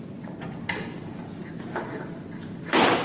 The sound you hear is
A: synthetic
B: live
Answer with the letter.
B